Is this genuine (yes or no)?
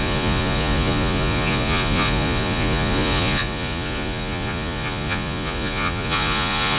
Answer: no